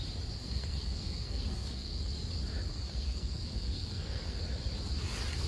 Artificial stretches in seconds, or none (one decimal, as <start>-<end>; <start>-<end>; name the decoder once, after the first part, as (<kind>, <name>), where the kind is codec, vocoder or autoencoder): 0.4-2.0 (codec, SNAC); 2.7-4.4